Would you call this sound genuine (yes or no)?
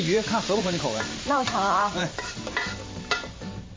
no